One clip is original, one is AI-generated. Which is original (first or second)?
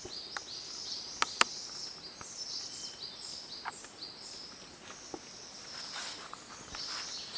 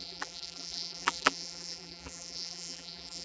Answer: first